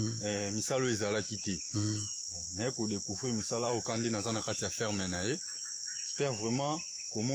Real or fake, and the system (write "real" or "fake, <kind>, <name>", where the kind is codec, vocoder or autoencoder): fake, autoencoder, DAC-VAE